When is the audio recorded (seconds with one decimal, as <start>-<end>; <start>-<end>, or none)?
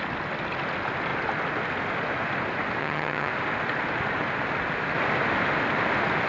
0.0-2.8; 3.3-6.3